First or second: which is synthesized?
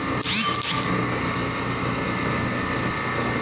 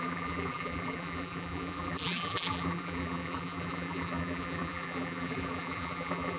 second